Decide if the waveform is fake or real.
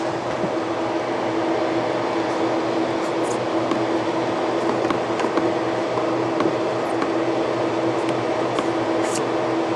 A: real